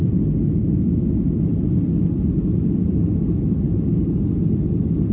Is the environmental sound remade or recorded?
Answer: recorded